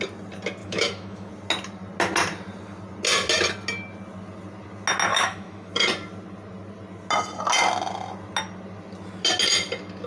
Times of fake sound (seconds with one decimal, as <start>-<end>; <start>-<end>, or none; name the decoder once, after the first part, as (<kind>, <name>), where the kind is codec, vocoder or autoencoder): 0.6-1.3 (autoencoder, DAC-VAE); 5.1-5.7